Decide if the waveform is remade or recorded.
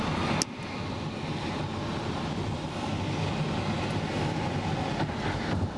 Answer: recorded